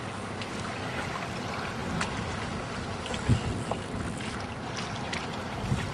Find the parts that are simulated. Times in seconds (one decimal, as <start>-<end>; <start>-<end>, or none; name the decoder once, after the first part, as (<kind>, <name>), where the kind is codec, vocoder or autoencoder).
none